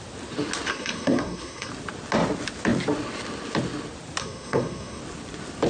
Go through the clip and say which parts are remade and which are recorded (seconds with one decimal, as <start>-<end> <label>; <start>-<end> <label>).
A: 0.0-0.7 recorded; 0.7-1.7 remade; 1.7-4.2 recorded; 4.2-5.0 remade; 5.0-5.7 recorded